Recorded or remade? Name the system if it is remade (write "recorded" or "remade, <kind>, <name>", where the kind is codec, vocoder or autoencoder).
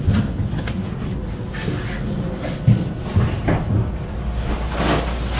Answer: recorded